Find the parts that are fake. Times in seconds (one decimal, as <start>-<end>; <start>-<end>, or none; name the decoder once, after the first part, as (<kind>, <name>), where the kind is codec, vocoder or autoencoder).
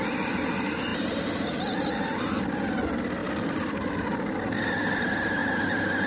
0.9-2.0 (vocoder, BigVGAN v2); 3.2-4.2